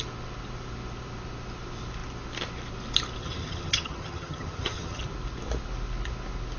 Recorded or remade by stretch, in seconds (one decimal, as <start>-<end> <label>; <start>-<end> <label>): 0.0-3.2 recorded; 3.2-5.0 remade; 5.0-6.6 recorded